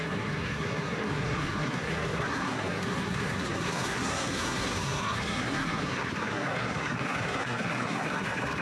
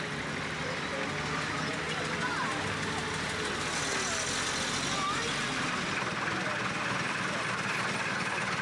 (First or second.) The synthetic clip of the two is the first